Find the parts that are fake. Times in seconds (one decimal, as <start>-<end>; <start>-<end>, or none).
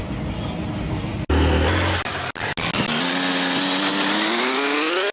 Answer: none